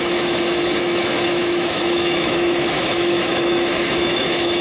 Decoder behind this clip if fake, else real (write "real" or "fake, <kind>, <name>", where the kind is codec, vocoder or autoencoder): fake, autoencoder, DAC-VAE